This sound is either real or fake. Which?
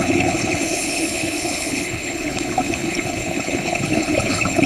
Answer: fake